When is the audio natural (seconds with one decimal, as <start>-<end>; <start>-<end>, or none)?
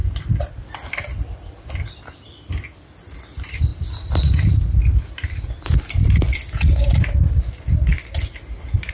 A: 0.0-8.9